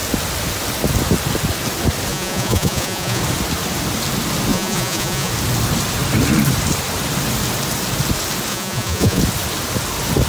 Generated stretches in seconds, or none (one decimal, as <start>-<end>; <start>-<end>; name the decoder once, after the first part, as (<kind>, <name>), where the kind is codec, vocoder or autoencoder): 2.1-3.2 (vocoder, Vocos); 4.5-5.3; 8.5-9.2